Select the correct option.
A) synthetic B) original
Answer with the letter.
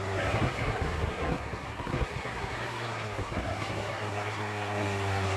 A